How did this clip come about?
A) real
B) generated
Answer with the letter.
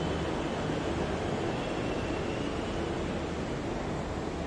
A